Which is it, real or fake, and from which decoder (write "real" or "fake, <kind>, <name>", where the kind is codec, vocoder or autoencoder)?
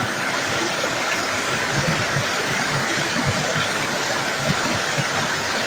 fake, codec, DAC